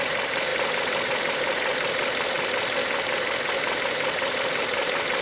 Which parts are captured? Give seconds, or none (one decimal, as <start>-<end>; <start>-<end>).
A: 0.0-5.2